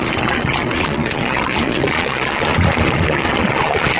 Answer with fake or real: fake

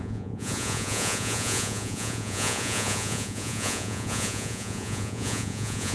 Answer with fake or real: fake